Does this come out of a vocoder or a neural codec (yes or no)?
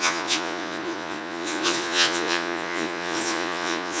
yes